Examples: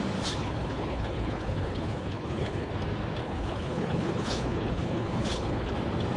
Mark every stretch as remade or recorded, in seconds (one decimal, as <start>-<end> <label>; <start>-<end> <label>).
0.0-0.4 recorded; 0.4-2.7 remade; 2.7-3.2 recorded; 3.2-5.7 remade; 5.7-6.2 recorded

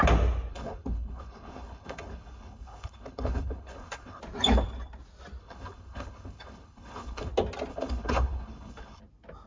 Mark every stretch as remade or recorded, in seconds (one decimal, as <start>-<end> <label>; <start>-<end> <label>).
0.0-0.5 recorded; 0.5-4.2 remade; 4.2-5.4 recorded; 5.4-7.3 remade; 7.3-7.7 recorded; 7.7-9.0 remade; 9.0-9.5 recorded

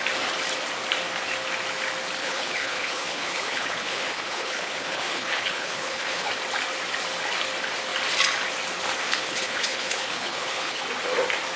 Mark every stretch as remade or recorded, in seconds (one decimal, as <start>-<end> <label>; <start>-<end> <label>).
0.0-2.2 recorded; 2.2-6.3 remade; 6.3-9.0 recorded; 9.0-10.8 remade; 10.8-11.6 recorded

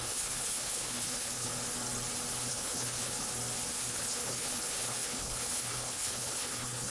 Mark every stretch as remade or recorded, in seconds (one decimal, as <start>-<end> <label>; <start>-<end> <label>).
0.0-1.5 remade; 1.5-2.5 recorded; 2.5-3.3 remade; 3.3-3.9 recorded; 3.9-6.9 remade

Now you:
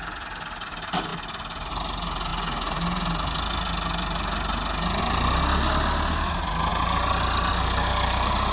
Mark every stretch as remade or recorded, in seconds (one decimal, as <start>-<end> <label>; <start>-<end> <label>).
0.0-8.5 recorded

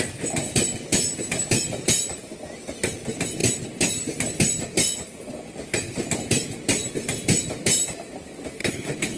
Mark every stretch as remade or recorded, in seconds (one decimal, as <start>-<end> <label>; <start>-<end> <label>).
0.0-8.6 recorded; 8.6-9.2 remade

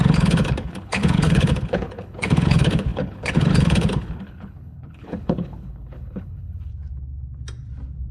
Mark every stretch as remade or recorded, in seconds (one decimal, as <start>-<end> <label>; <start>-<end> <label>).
0.0-6.7 remade; 6.7-8.1 recorded